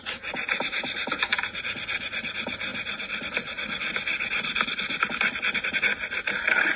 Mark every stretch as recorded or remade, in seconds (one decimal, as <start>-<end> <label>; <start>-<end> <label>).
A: 0.0-6.8 remade